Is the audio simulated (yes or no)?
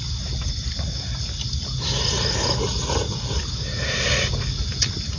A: no